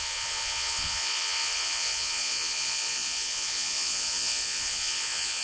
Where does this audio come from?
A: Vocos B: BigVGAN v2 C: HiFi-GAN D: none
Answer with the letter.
A